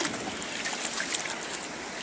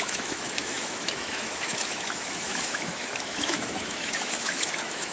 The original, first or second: first